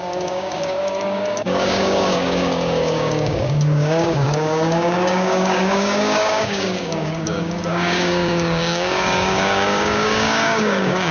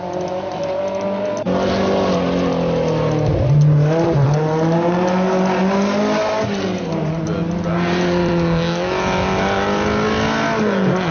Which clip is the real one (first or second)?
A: second